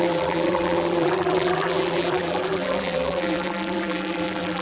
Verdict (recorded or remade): remade